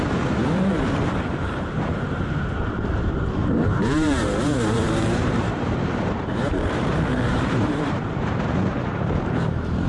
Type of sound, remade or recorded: remade